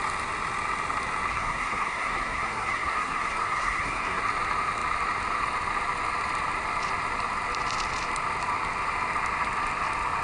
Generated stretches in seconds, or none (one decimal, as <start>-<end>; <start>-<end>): 1.3-4.2

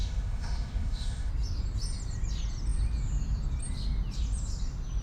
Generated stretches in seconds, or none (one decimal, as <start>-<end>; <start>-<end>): 0.0-1.3

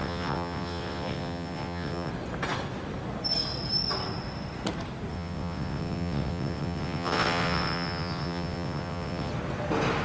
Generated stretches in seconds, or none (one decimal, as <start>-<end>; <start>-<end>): 0.0-2.1; 5.1-9.3

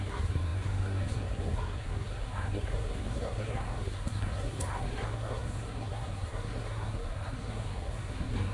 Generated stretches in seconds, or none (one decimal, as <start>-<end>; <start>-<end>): 0.0-8.5

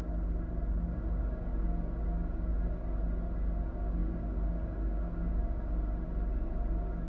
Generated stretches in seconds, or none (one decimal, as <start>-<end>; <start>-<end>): none